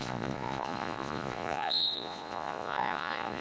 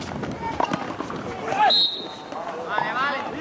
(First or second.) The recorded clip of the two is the second